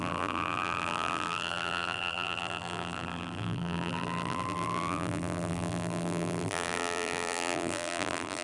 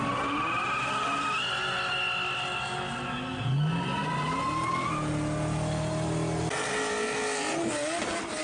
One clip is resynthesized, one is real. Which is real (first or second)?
second